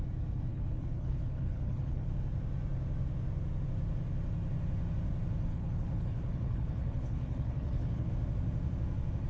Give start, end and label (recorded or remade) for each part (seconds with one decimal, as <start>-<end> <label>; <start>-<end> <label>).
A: 0.0-0.5 recorded; 0.5-2.1 remade; 2.1-5.5 recorded; 5.5-8.1 remade; 8.1-9.3 recorded